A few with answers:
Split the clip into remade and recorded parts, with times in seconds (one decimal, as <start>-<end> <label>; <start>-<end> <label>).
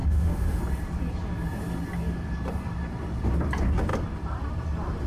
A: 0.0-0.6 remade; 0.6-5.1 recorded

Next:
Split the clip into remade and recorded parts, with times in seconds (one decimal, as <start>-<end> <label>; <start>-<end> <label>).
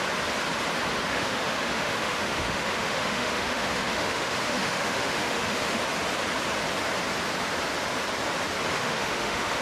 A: 0.0-1.1 recorded; 1.1-5.8 remade; 5.8-8.7 recorded; 8.7-9.6 remade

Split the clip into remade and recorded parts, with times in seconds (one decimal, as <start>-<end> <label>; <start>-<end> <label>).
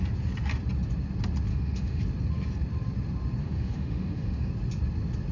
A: 0.0-1.5 recorded; 1.5-2.0 remade; 2.0-3.4 recorded; 3.4-4.5 remade; 4.5-5.3 recorded